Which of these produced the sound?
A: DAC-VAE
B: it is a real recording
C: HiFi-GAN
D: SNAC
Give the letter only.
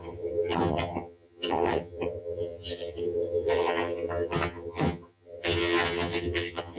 C